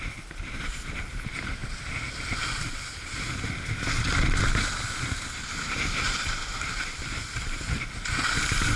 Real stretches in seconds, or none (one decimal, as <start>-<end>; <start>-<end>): 1.6-4.4